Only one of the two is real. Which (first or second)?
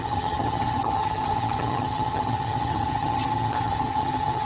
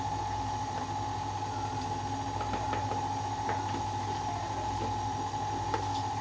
second